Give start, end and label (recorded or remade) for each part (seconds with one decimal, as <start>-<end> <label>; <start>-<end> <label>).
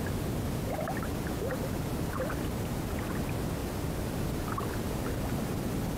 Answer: 0.0-6.0 recorded